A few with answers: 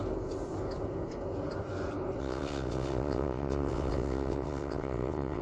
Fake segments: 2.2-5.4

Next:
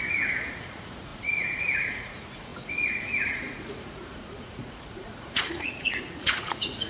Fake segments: 0.0-6.9

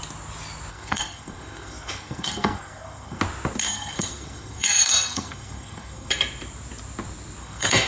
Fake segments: 0.7-3.2; 3.6-6.1; 7.4-7.9

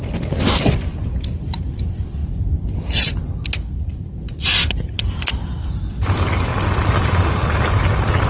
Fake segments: 0.0-2.2; 4.8-8.3

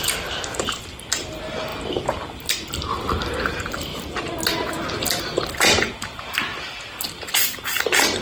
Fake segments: none

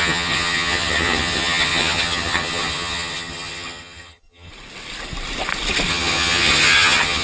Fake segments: 0.0-4.5; 5.9-7.2